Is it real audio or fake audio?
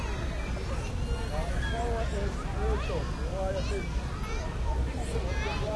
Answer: real